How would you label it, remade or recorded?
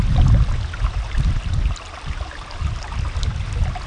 recorded